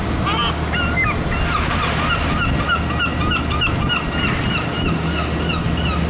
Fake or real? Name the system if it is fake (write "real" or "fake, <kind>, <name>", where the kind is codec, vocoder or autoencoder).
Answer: real